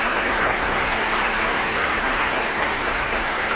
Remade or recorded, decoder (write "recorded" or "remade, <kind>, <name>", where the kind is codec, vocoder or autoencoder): remade, codec, SNAC